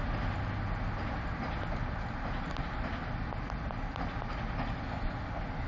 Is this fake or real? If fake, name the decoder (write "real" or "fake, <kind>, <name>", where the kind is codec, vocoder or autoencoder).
real